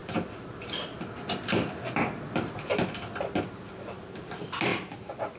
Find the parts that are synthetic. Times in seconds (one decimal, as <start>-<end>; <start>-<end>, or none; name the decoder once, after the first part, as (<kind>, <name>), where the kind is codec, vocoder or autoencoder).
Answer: 0.0-3.2 (vocoder, BigVGAN v2); 4.7-5.4